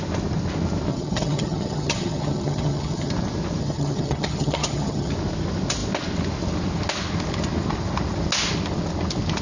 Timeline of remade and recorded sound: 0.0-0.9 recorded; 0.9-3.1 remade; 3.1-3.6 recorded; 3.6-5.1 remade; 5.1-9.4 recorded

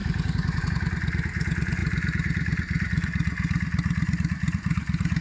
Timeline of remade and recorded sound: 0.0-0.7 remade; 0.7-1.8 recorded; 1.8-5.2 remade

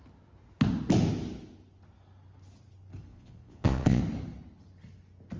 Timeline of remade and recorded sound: 0.0-3.1 recorded; 3.1-4.0 remade; 4.0-5.4 recorded

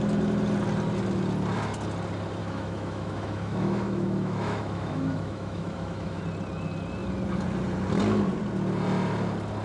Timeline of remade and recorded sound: 0.0-2.4 recorded; 2.4-6.2 remade; 6.2-9.6 recorded